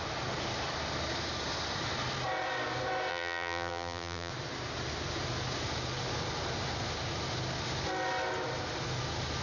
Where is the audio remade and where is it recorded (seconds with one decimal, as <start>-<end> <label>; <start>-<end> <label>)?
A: 0.0-3.1 recorded; 3.1-4.3 remade; 4.3-9.4 recorded